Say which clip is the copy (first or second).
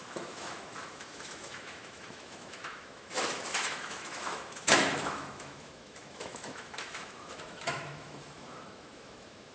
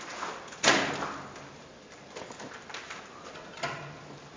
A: first